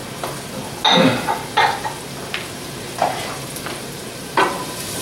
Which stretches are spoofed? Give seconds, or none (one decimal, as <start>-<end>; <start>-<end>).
none